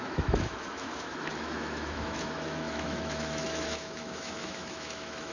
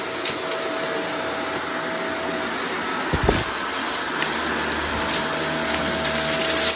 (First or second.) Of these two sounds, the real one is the second